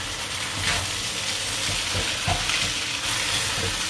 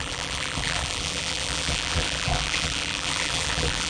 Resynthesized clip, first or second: second